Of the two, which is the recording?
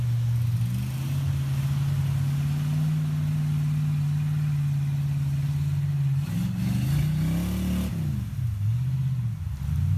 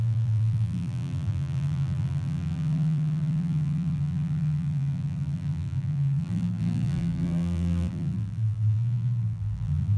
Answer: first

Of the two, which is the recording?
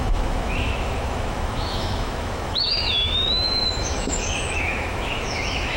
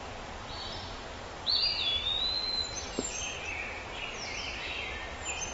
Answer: second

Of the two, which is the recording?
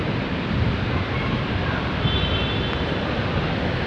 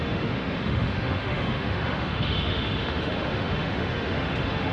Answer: first